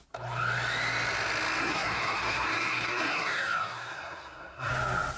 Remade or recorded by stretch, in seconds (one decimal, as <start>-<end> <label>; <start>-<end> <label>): 0.0-1.6 recorded; 1.6-4.7 remade; 4.7-5.2 recorded